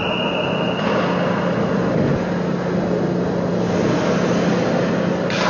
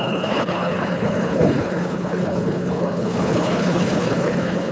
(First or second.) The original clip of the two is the first